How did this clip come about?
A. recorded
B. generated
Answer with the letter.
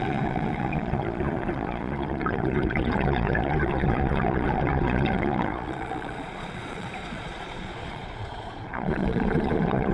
B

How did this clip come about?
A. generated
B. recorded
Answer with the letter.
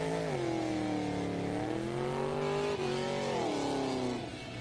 B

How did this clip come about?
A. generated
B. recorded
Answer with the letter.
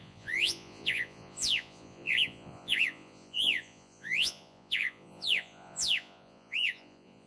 A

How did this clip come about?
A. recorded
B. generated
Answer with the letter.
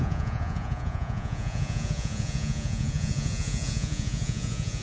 B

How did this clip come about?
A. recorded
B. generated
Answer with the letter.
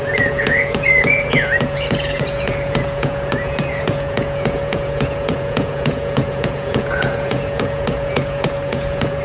B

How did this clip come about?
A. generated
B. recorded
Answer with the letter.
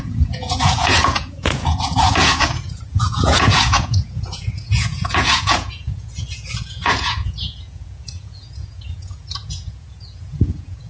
A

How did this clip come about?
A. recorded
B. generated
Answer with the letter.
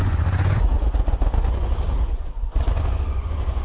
B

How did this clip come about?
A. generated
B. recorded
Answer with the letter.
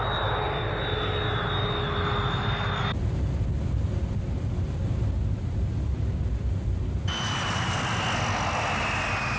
B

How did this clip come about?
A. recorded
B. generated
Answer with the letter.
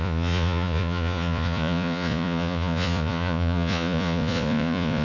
B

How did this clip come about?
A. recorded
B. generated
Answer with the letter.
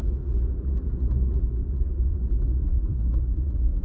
B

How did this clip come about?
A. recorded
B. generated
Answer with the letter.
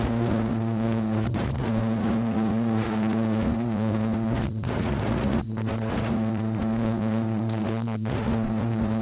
B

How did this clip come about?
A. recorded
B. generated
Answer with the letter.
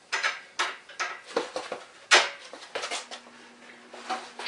A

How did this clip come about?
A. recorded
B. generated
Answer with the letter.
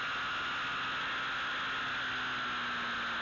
A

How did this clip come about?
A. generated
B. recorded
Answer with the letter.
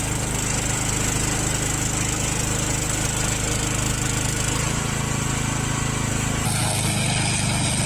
B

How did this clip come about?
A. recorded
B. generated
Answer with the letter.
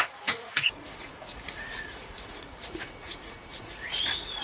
B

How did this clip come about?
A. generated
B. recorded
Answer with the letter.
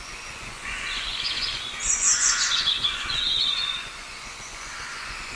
A